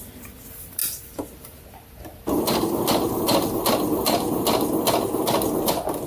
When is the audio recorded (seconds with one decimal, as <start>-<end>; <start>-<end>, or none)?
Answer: 0.0-6.1